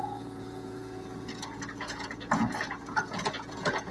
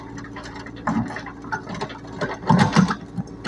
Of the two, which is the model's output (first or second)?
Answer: first